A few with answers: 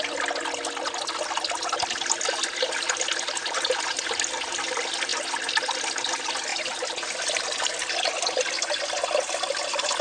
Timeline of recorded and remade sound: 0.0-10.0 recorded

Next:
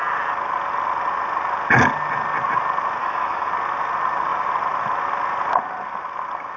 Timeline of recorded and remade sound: 0.0-3.0 recorded; 3.0-3.5 remade; 3.5-6.6 recorded

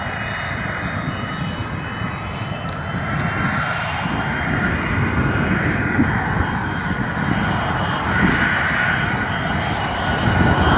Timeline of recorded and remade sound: 0.0-10.8 recorded